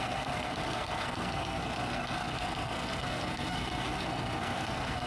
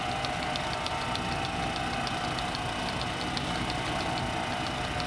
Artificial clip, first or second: first